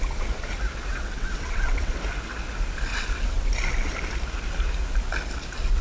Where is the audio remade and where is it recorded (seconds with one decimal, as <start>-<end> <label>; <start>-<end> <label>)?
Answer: 0.0-0.9 recorded; 0.9-1.9 remade; 1.9-2.9 recorded; 2.9-3.5 remade; 3.5-5.8 recorded